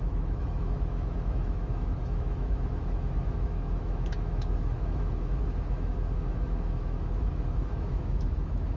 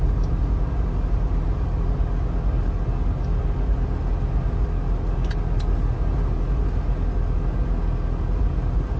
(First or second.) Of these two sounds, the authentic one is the second